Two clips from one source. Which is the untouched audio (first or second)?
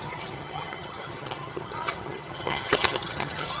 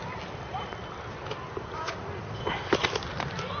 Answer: second